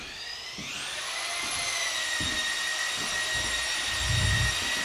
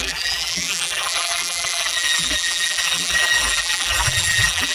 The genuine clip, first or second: first